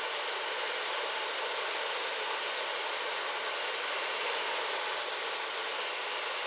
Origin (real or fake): real